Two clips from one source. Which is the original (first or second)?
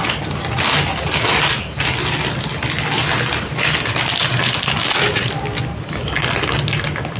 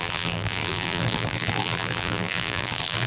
first